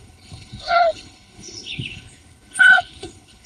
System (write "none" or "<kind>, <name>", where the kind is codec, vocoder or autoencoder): codec, HILCodec